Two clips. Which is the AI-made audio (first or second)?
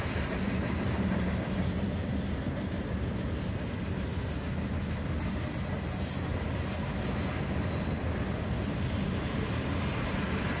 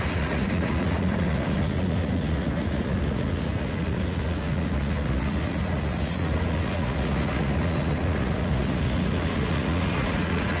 second